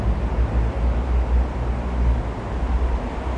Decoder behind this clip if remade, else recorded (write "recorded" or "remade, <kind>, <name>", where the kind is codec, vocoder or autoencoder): recorded